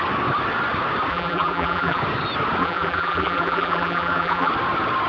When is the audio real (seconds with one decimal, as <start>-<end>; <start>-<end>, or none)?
0.0-1.1; 2.0-2.6; 4.5-5.1